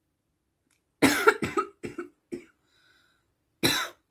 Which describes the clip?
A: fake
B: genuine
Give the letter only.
B